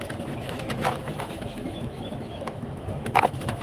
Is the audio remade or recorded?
remade